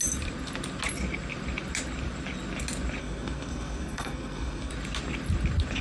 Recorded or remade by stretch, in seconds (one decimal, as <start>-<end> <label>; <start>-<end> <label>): 0.0-3.0 recorded; 3.0-4.7 remade; 4.7-5.8 recorded